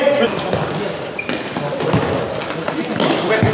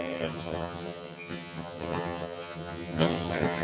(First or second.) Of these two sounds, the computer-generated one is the second